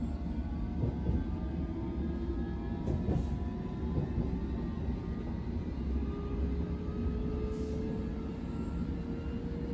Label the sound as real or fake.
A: real